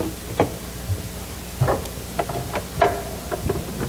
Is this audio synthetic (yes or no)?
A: no